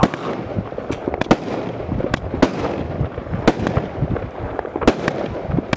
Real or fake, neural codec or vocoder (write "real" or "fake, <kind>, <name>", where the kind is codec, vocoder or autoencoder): real